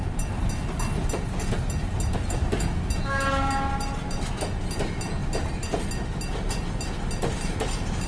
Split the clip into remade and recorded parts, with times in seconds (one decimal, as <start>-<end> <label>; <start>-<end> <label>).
0.0-8.1 recorded